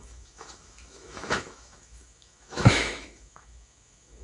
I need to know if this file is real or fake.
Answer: fake